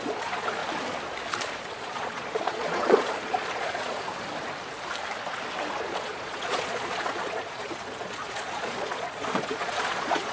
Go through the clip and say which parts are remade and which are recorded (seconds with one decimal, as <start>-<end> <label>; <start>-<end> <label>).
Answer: 0.0-0.6 remade; 0.6-1.6 recorded; 1.6-4.1 remade; 4.1-5.8 recorded; 5.8-10.3 remade